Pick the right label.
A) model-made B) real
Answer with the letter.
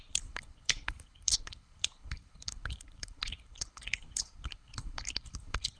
A